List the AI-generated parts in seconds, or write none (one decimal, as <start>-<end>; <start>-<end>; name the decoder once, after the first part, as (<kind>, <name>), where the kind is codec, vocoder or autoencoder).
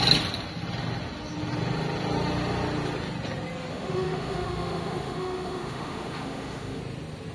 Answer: 3.7-6.8 (autoencoder, DAC-VAE)